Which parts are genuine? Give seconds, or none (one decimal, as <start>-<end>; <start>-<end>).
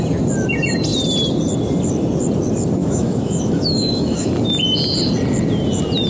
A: 0.0-2.8; 4.3-6.1